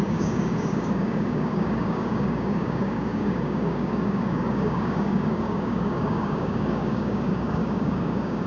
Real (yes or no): no